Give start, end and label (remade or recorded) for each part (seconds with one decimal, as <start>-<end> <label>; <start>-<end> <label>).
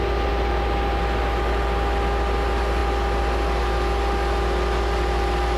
0.0-5.6 recorded